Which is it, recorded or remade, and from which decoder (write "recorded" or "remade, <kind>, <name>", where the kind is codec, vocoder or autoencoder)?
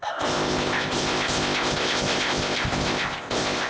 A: remade, codec, ZipCodec